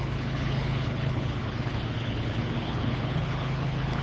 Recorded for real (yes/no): no